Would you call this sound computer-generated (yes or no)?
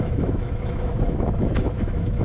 yes